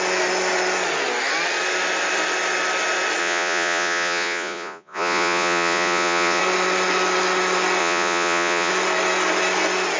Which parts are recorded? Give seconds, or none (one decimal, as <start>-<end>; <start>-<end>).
0.0-3.2; 6.4-7.8; 8.7-10.0